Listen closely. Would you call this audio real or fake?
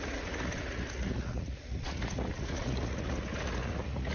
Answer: fake